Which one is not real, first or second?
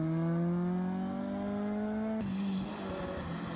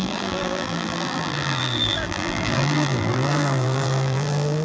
second